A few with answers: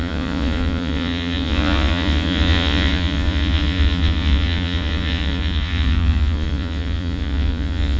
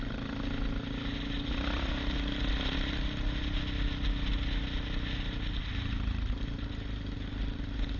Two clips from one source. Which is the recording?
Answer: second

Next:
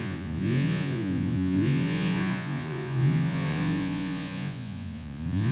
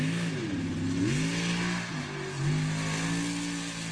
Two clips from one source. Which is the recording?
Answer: second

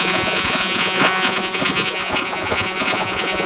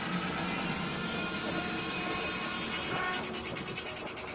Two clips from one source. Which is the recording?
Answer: second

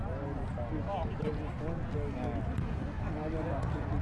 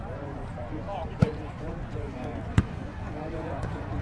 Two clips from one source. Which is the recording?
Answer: first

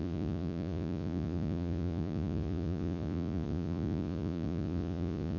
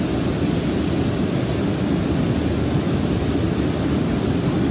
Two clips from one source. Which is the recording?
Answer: second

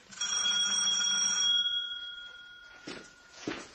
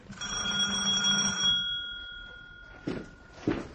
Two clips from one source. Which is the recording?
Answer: second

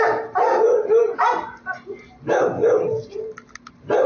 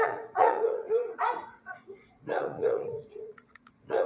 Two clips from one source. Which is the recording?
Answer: first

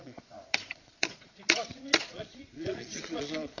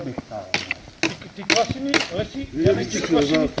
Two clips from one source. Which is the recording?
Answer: second